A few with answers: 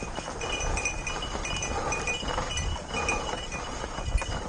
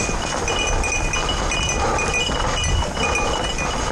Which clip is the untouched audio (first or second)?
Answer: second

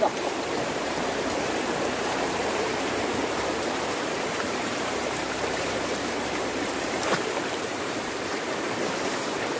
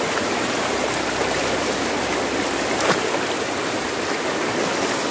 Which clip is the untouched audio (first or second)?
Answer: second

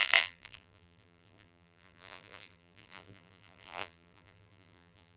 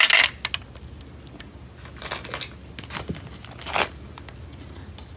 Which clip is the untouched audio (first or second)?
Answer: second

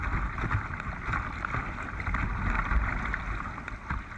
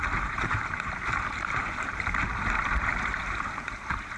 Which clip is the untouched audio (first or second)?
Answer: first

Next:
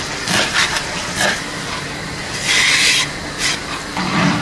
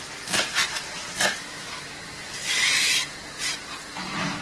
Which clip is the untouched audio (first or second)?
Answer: second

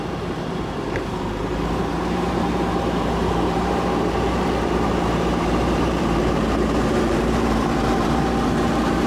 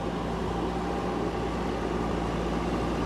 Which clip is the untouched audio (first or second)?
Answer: second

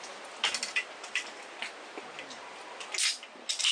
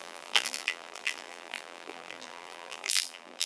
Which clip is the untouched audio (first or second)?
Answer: first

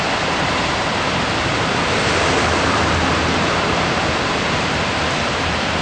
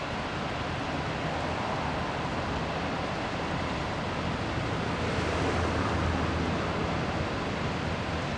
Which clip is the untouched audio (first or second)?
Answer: second